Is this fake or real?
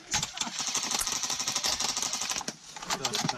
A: fake